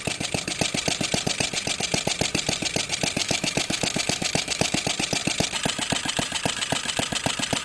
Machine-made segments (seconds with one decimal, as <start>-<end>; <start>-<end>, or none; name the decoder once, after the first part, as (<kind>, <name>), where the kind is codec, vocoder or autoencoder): 3.2-4.8 (autoencoder, DAC-VAE)